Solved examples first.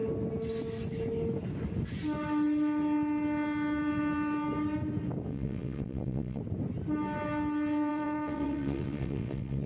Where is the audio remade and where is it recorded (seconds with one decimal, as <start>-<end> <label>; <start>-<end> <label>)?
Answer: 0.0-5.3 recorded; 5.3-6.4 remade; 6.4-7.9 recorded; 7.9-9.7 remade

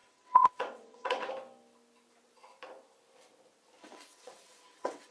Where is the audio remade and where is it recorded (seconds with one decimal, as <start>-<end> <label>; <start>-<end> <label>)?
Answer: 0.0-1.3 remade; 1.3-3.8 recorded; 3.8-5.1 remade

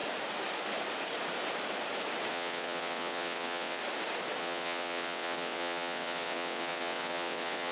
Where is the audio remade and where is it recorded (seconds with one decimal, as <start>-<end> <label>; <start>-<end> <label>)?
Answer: 0.0-2.3 recorded; 2.3-3.8 remade; 3.8-4.4 recorded; 4.4-7.7 remade

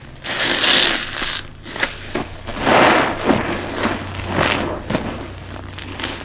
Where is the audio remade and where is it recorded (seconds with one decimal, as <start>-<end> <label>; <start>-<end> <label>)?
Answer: 0.0-6.2 recorded

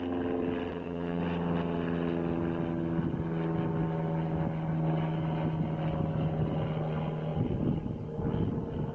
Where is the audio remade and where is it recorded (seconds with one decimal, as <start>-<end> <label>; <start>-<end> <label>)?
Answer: 0.0-0.7 recorded; 0.7-1.2 remade; 1.2-8.9 recorded

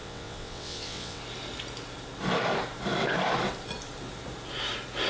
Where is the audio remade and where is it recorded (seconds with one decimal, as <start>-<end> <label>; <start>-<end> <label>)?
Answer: 0.0-1.2 remade; 1.2-5.1 recorded

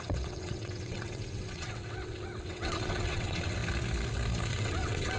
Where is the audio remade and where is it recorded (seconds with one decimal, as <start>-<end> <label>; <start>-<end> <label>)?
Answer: 0.0-3.6 remade; 3.6-4.5 recorded; 4.5-5.2 remade